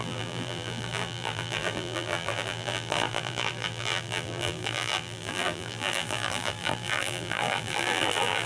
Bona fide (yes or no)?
no